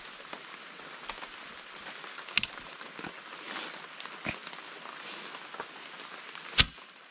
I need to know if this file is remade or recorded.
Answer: recorded